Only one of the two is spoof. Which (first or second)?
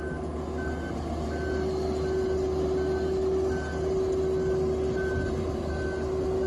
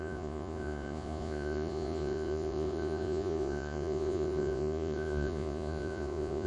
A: second